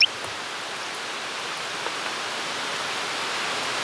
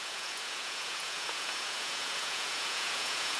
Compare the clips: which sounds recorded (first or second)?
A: first